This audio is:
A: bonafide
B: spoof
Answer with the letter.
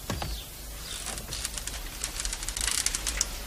A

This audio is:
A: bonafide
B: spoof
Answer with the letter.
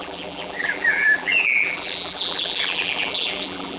B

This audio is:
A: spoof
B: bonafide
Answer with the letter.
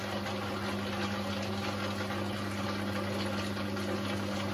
B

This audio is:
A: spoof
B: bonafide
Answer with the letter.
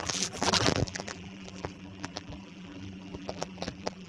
A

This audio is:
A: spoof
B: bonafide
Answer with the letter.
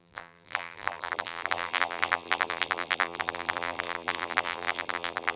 A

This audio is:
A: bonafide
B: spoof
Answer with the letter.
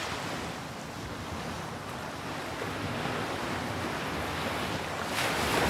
A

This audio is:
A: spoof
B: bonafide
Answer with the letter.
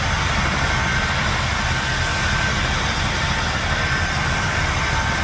B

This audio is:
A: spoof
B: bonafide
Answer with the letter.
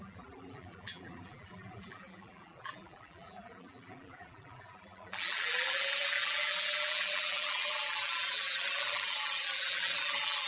A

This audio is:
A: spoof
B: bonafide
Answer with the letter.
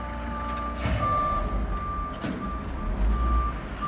B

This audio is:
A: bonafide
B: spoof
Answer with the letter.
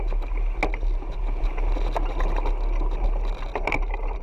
A